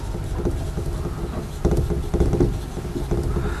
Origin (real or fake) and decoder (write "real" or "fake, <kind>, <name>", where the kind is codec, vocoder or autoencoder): real